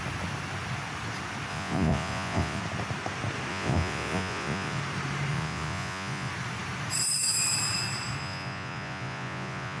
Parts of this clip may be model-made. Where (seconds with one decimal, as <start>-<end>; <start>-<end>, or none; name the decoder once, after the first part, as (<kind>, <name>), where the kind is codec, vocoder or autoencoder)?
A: 1.5-2.6 (vocoder, Vocos); 3.5-4.8; 5.3-6.3; 8.2-9.8